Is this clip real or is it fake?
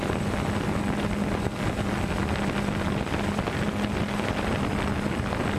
real